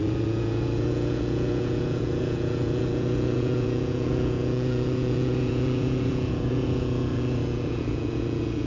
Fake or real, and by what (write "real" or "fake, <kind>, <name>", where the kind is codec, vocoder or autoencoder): fake, vocoder, Vocos